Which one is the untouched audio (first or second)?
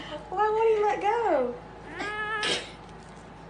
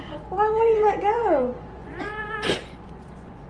first